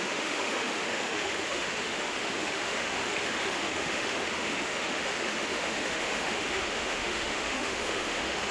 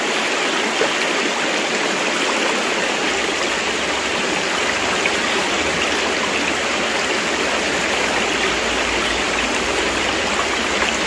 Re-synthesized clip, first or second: first